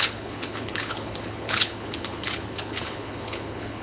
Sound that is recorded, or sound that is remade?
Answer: remade